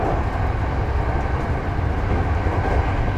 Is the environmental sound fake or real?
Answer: real